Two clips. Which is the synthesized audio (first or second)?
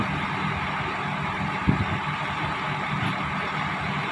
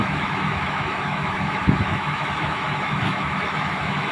second